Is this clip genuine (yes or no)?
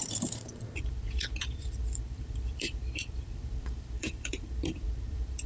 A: no